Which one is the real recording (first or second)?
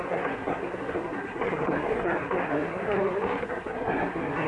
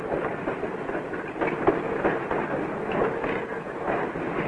second